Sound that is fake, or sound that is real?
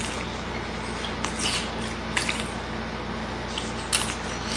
real